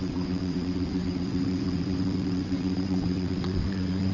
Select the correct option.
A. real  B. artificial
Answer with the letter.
B